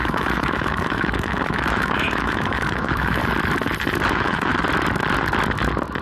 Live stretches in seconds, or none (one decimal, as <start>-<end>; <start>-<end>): 3.2-4.1; 4.5-6.0